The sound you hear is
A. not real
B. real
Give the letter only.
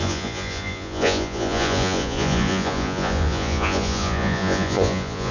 A